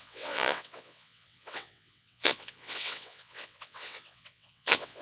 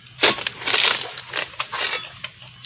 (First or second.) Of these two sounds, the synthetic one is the first